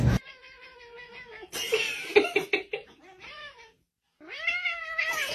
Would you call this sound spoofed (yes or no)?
no